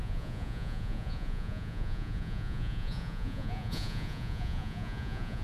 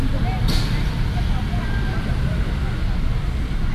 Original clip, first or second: second